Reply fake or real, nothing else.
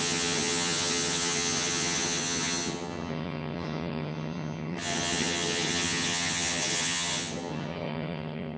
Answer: fake